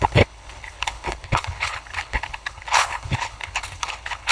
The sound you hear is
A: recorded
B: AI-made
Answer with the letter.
B